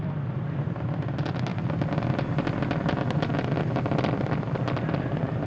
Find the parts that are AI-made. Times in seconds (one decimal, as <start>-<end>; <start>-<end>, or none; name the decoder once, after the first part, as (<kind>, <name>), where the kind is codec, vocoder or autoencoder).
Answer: none